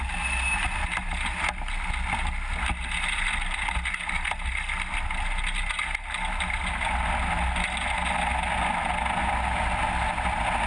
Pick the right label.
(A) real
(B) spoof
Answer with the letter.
A